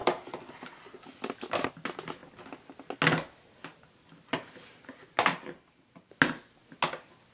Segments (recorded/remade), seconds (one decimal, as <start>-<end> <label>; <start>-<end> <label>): 0.0-0.7 remade; 0.7-5.3 recorded; 5.3-6.1 remade; 6.1-7.3 recorded